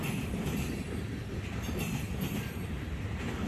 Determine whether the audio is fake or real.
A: fake